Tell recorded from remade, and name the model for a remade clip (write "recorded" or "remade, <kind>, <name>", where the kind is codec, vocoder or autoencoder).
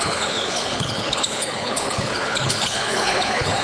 remade, codec, HILCodec